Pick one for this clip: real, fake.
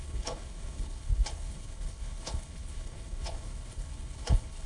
fake